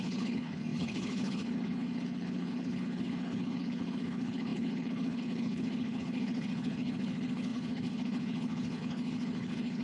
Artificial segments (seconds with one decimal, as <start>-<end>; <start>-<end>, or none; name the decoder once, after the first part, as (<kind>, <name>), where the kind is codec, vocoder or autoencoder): 0.0-9.8 (codec, HILCodec)